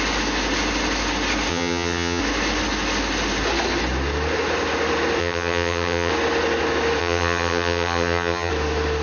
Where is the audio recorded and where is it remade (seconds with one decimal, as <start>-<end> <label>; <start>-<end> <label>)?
0.0-1.5 recorded; 1.5-2.2 remade; 2.2-5.2 recorded; 5.2-6.1 remade; 6.1-7.0 recorded; 7.0-8.5 remade; 8.5-9.0 recorded

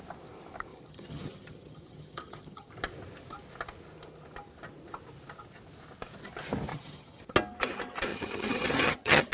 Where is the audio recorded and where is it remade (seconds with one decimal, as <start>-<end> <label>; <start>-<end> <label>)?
0.0-0.7 recorded; 0.7-2.7 remade; 2.7-6.7 recorded; 6.7-7.2 remade; 7.2-8.1 recorded; 8.1-9.3 remade

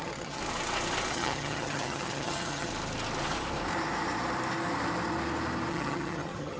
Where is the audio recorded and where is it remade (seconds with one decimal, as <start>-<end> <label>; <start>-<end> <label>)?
0.0-0.4 remade; 0.4-1.1 recorded; 1.1-2.7 remade; 2.7-5.7 recorded; 5.7-6.6 remade

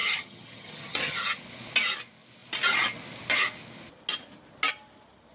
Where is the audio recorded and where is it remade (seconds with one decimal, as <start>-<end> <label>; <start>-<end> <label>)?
0.0-1.4 remade; 1.4-5.3 recorded

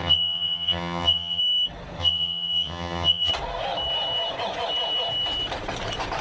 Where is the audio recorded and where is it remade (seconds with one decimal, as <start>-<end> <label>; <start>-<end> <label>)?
0.0-1.4 remade; 1.4-2.0 recorded; 2.0-3.3 remade; 3.3-6.2 recorded

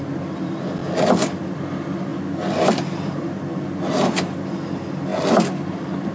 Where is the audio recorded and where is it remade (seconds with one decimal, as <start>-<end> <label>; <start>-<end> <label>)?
0.0-6.1 recorded

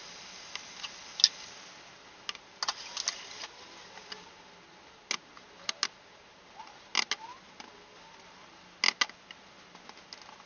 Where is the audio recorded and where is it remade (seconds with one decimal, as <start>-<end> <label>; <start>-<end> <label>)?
0.0-10.5 recorded